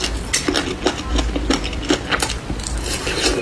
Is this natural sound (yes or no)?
yes